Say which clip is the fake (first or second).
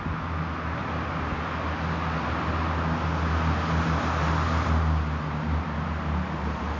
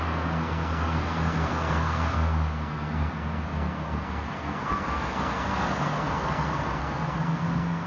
second